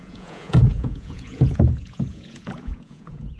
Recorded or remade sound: remade